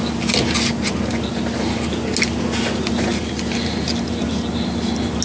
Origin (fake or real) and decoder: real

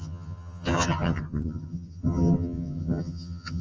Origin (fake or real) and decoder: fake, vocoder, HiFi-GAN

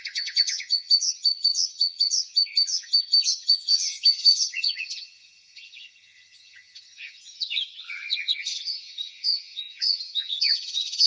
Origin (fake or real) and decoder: fake, vocoder, HiFi-GAN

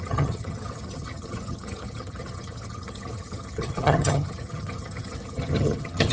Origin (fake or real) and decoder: fake, vocoder, HiFi-GAN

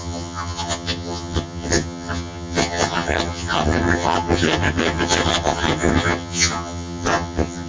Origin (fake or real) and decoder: fake, vocoder, HiFi-GAN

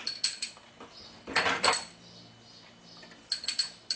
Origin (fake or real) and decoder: real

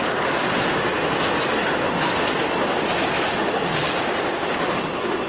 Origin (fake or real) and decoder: real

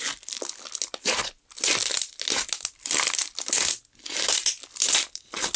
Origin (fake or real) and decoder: real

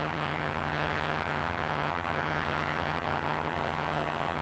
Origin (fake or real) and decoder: fake, vocoder, HiFi-GAN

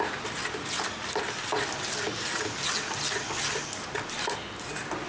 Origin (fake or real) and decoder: real